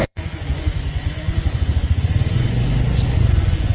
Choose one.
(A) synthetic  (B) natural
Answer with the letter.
A